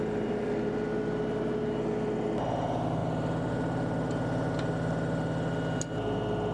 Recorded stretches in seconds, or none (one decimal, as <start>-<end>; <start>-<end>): 0.0-6.5